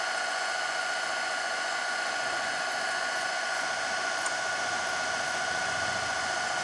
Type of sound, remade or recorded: remade